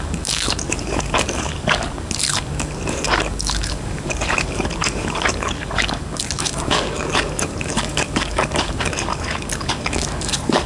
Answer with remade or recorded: remade